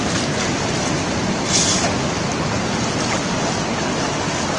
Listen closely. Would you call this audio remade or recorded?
recorded